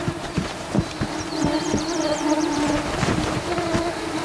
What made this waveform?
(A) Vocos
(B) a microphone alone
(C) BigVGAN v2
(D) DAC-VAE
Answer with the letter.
C